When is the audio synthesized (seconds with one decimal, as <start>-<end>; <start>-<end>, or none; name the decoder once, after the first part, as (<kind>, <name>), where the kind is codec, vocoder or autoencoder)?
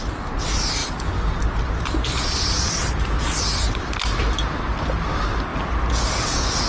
0.8-4.8 (vocoder, BigVGAN v2)